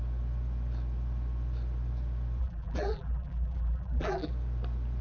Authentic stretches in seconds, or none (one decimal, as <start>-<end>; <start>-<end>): 0.0-2.4; 4.3-5.0